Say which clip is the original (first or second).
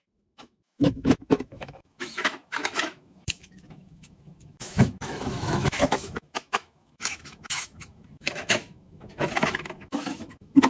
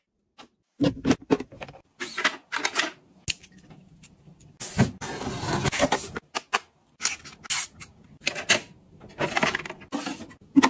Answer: second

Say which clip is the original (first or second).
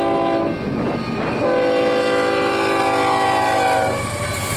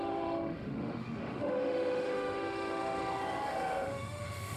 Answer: first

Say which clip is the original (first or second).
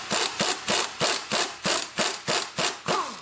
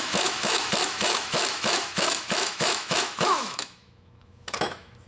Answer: first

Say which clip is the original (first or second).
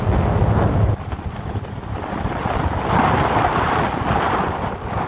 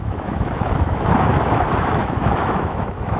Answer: first